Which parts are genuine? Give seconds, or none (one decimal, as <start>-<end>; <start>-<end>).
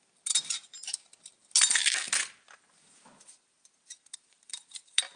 0.0-5.2